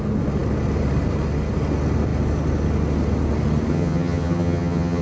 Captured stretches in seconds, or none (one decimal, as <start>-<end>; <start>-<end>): 0.0-3.7

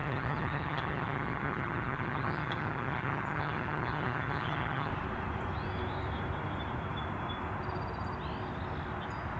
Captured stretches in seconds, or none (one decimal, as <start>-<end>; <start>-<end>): 4.9-9.4